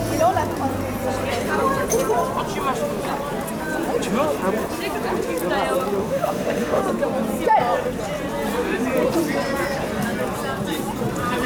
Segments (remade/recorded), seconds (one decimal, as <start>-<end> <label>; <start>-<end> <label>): 0.0-6.0 recorded; 6.0-6.8 remade; 6.8-11.5 recorded